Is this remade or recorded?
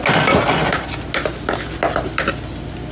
recorded